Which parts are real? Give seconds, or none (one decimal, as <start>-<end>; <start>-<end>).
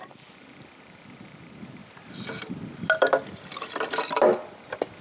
1.8-5.0